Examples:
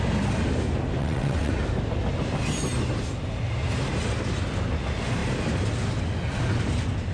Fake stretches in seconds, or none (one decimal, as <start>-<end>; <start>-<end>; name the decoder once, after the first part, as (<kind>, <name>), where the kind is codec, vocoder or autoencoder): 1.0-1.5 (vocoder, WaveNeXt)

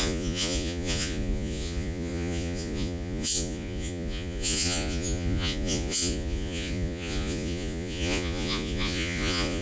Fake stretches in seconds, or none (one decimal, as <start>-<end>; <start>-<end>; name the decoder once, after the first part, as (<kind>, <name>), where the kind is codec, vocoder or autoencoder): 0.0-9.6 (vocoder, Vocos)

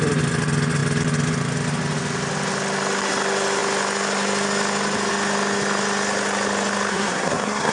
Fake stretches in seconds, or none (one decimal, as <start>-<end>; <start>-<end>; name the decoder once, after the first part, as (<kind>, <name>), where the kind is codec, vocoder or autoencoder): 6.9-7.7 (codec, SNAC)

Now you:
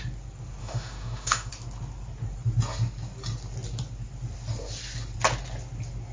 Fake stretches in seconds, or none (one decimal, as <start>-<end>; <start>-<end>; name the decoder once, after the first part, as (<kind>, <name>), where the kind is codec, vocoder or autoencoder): 0.6-1.5 (autoencoder, DAC-VAE)

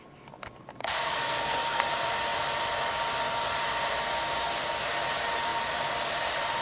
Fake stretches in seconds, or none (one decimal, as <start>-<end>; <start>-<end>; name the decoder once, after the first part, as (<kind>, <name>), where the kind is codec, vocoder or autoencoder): 0.8-1.8 (codec, SNAC)

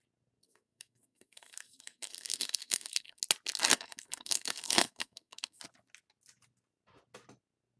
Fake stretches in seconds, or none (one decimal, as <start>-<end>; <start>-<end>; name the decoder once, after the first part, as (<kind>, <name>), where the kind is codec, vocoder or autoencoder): 0.4-3.2 (codec, SNAC); 3.7-5.6